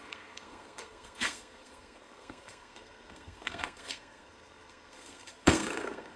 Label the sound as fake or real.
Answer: fake